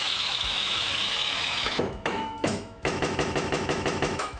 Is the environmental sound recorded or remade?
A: remade